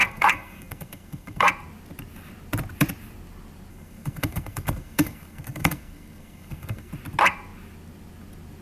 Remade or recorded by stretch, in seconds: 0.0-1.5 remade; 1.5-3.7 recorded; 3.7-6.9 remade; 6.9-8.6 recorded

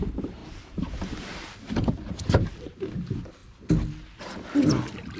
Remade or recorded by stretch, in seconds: 0.0-3.4 recorded; 3.4-4.2 remade; 4.2-5.2 recorded